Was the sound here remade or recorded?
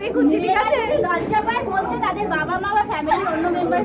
recorded